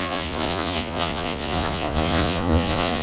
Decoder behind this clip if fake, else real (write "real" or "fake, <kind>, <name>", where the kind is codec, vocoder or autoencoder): fake, vocoder, Vocos